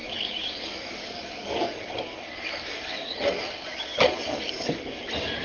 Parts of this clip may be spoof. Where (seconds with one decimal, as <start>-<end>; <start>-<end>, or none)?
0.0-3.2; 3.9-5.0